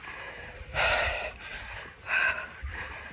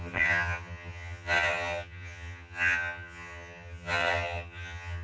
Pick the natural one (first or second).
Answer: first